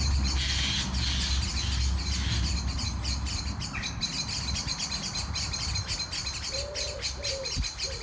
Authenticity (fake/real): real